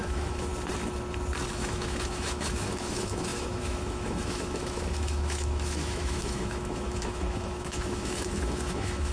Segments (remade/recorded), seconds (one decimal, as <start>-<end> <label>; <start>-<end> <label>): 0.0-0.5 remade; 0.5-1.5 recorded; 1.5-9.1 remade